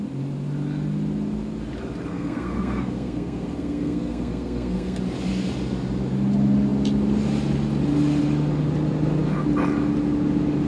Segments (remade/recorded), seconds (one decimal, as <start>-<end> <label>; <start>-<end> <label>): 0.0-2.1 recorded; 2.1-5.0 remade; 5.0-10.7 recorded